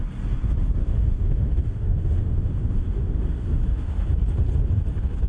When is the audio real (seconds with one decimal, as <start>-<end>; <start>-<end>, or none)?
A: 0.0-0.8; 4.0-5.3